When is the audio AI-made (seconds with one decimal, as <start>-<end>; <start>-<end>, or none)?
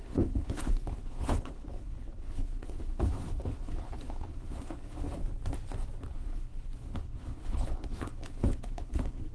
0.0-5.2; 6.1-9.3